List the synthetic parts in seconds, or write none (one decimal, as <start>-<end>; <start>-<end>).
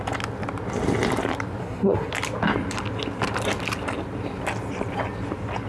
1.6-2.1